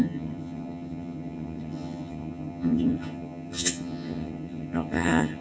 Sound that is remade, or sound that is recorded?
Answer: remade